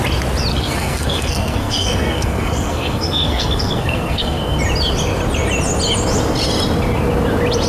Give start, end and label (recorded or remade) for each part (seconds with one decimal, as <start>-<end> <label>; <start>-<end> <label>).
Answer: 0.0-0.5 recorded; 0.5-4.6 remade; 4.6-7.7 recorded